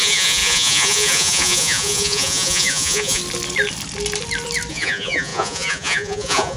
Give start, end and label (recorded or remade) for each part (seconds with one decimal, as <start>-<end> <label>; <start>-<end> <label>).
0.0-3.2 remade; 3.2-4.7 recorded; 4.7-6.6 remade